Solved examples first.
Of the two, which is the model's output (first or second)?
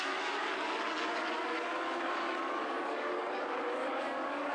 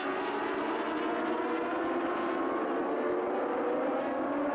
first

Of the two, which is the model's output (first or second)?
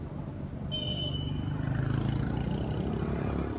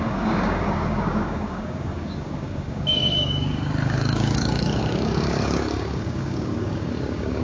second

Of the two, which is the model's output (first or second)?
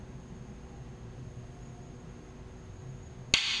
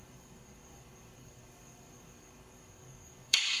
second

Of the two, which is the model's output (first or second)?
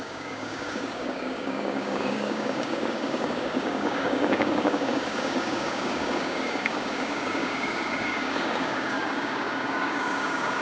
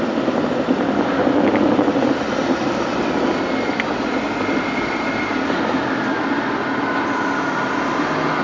first